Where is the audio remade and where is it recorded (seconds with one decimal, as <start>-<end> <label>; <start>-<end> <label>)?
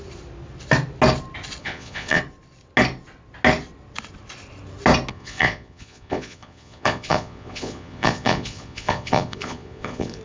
0.0-1.6 recorded; 1.6-2.2 remade; 2.2-5.1 recorded; 5.1-10.2 remade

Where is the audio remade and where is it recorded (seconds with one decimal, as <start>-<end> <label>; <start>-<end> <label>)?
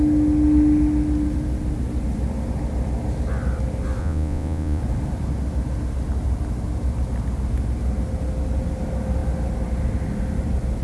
0.0-4.0 recorded; 4.0-4.8 remade; 4.8-10.8 recorded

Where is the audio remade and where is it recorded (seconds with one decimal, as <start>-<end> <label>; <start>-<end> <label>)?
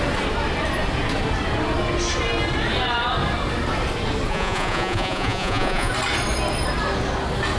0.0-4.3 recorded; 4.3-5.9 remade; 5.9-7.6 recorded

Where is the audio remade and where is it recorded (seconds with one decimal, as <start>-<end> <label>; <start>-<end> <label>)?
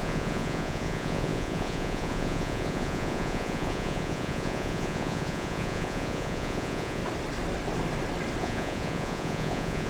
0.0-7.0 remade; 7.0-8.4 recorded; 8.4-9.9 remade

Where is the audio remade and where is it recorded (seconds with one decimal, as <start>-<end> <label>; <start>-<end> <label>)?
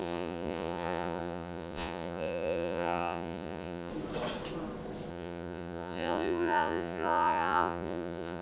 0.0-3.9 remade; 3.9-5.1 recorded; 5.1-8.4 remade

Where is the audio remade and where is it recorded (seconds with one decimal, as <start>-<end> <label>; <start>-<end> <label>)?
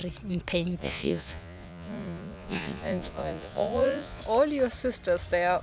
0.0-0.8 recorded; 0.8-4.2 remade; 4.2-5.6 recorded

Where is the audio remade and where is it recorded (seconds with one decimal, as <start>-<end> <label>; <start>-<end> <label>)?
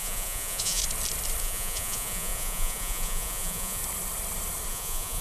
0.0-0.8 remade; 0.8-1.4 recorded; 1.4-3.8 remade; 3.8-4.7 recorded; 4.7-5.2 remade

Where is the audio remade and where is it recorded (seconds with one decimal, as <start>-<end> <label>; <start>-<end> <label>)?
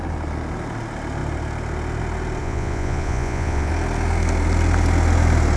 0.0-2.4 recorded; 2.4-3.7 remade; 3.7-5.6 recorded